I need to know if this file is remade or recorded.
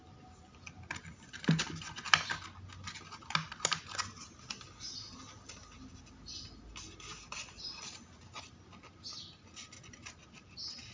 recorded